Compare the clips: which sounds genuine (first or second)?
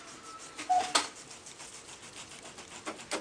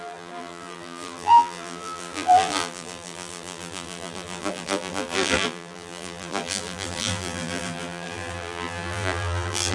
first